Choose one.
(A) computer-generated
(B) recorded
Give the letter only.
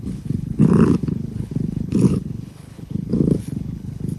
A